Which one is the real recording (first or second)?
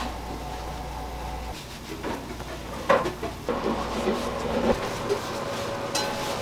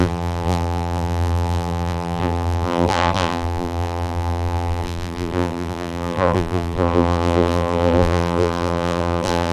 first